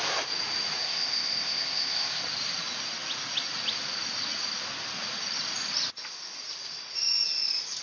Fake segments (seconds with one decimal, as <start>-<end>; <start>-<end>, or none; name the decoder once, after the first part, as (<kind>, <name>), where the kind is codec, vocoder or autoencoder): 0.8-2.2 (codec, ZipCodec)